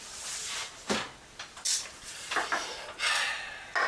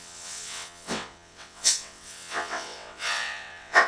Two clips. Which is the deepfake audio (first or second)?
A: second